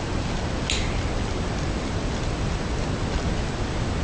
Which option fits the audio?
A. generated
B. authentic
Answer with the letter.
B